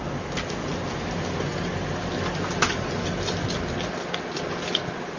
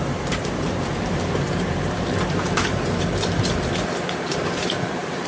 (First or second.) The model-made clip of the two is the second